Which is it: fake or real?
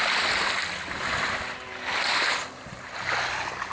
real